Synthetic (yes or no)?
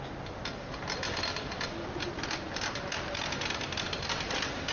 no